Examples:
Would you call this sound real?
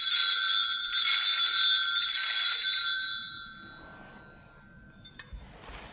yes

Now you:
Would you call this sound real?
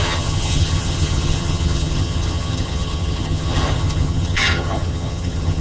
no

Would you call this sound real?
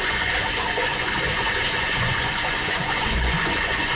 no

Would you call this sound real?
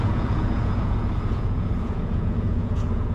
no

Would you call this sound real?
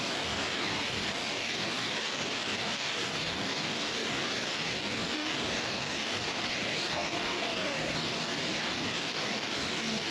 no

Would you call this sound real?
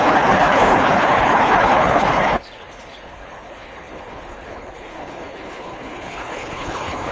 no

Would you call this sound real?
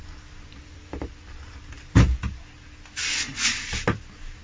yes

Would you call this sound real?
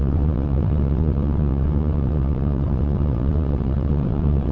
no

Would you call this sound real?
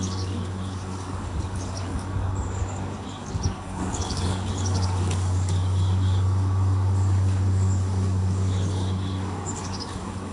no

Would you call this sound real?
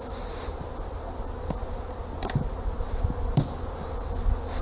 yes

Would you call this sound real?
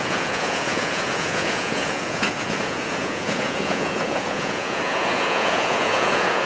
no